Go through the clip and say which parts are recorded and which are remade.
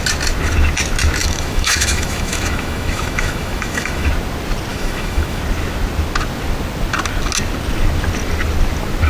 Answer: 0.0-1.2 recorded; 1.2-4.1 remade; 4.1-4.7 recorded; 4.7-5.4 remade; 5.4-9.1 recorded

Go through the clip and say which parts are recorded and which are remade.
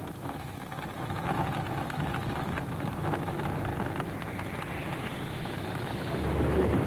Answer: 0.0-3.7 remade; 3.7-5.3 recorded; 5.3-6.9 remade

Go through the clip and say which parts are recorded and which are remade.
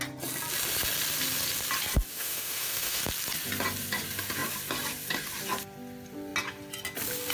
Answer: 0.0-2.1 recorded; 2.1-3.0 remade; 3.0-7.3 recorded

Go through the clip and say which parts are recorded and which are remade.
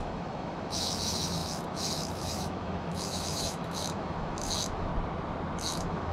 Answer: 0.0-4.9 remade; 4.9-5.6 recorded; 5.6-6.1 remade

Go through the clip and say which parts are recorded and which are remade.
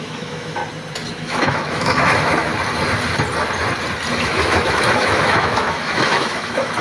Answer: 0.0-0.6 remade; 0.6-1.1 recorded; 1.1-2.5 remade; 2.5-4.2 recorded; 4.2-6.8 remade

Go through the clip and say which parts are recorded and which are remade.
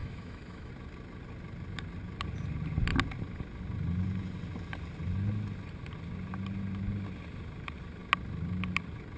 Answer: 0.0-0.7 remade; 0.7-9.2 recorded